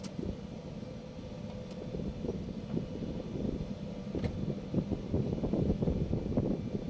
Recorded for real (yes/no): yes